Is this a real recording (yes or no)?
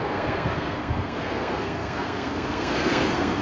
no